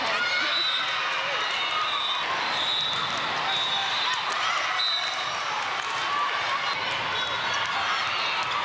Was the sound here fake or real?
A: real